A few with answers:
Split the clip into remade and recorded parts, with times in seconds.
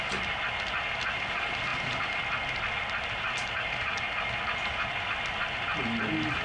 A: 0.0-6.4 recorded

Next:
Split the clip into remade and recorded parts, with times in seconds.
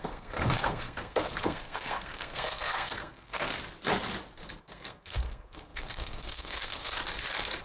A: 0.0-3.5 remade; 3.5-4.6 recorded; 4.6-7.0 remade; 7.0-7.6 recorded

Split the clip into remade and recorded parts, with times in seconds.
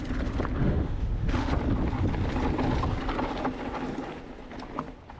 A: 0.0-0.6 recorded; 0.6-1.5 remade; 1.5-5.2 recorded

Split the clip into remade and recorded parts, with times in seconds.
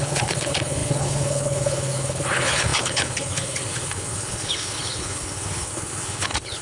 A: 0.0-6.6 remade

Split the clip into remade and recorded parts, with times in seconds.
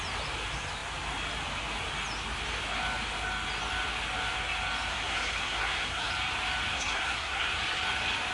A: 0.0-4.9 recorded; 4.9-6.1 remade; 6.1-6.7 recorded; 6.7-7.5 remade; 7.5-8.3 recorded